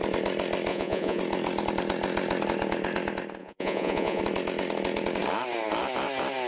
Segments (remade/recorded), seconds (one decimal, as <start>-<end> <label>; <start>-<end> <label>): 0.0-0.7 recorded; 0.7-1.2 remade; 1.2-3.4 recorded; 3.4-4.2 remade; 4.2-6.5 recorded